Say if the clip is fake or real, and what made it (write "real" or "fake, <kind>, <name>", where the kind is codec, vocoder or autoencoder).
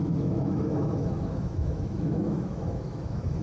fake, autoencoder, DAC-VAE